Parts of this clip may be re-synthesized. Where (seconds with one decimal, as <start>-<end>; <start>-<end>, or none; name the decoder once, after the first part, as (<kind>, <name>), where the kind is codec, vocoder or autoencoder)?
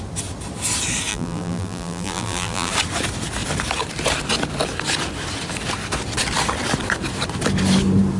1.1-2.7 (vocoder, BigVGAN v2)